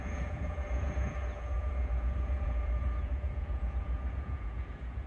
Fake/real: fake